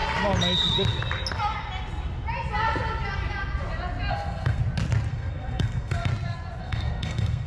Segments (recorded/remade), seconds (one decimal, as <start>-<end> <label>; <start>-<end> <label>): 0.0-4.1 recorded; 4.1-4.6 remade; 4.6-5.1 recorded; 5.1-6.1 remade; 6.1-6.6 recorded; 6.6-7.5 remade